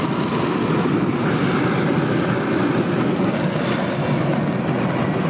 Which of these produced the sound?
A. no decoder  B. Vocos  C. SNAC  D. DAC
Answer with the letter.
A